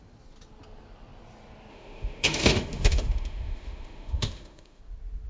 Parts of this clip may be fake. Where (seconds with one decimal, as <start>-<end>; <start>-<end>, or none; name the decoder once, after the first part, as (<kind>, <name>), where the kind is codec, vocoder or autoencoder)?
1.7-4.8 (autoencoder, DAC-VAE)